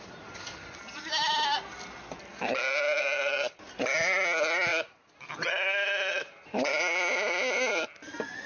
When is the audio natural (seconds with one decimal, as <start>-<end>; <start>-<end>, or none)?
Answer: 0.0-8.5